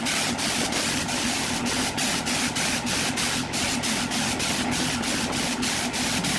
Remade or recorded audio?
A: recorded